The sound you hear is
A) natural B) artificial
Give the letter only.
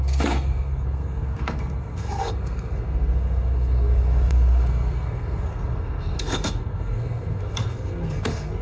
B